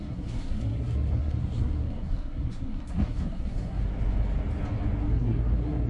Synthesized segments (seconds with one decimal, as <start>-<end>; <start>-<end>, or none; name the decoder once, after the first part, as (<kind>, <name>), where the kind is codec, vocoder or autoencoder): 0.0-3.8 (codec, SNAC); 5.1-5.9